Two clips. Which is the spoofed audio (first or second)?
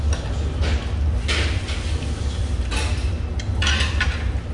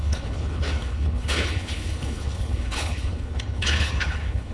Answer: second